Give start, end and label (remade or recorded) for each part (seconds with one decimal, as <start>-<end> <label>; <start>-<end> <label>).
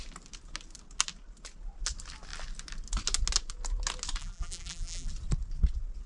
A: 0.0-4.2 recorded; 4.2-5.1 remade; 5.1-6.1 recorded